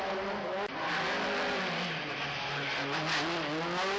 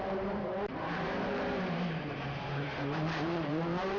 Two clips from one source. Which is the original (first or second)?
first